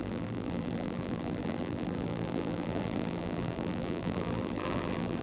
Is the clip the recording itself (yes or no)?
no